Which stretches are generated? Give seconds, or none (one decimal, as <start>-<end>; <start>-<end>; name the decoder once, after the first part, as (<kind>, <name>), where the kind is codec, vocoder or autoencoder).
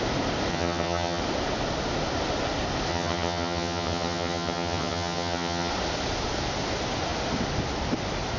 0.5-1.2 (vocoder, HiFi-GAN); 2.9-5.7